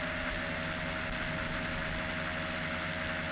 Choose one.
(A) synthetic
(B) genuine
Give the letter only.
B